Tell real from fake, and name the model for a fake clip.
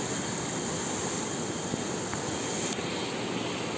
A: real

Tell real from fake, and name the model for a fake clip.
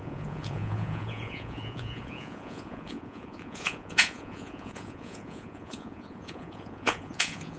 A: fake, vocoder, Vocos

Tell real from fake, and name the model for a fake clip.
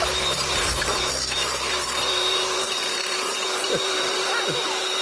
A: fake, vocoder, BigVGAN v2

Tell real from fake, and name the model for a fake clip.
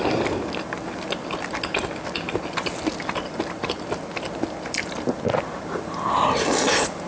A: real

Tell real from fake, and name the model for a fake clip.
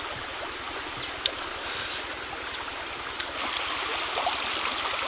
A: real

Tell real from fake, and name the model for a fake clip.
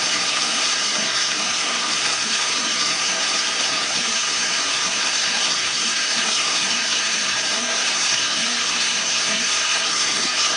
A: fake, codec, SNAC